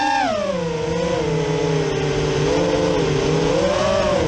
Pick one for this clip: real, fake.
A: real